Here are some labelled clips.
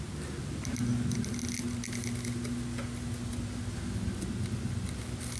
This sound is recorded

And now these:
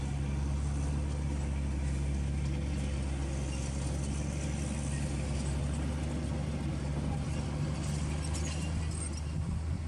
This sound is recorded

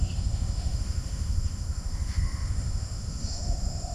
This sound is remade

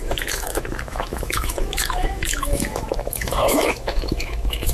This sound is remade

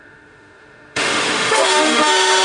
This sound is remade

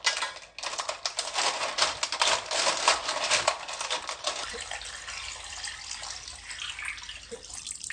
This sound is recorded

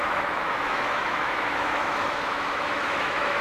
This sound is remade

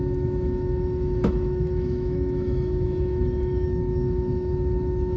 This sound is remade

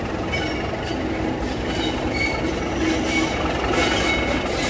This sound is recorded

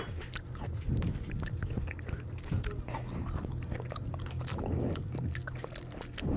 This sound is recorded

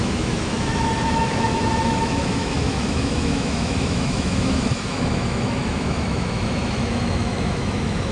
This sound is remade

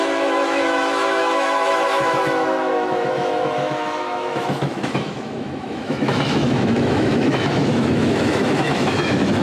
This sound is remade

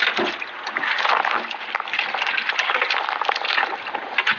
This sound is recorded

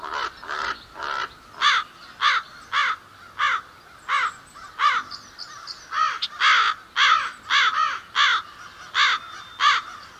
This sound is recorded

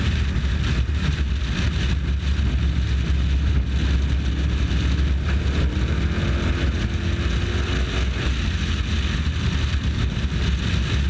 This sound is recorded